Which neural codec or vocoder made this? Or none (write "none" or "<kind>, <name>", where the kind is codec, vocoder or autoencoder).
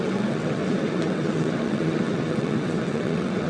vocoder, WaveNeXt